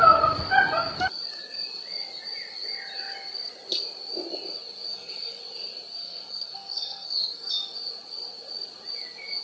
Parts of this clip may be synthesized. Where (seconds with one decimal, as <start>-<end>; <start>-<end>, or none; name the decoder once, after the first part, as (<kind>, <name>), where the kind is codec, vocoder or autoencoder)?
4.9-5.4 (codec, SNAC); 6.0-7.5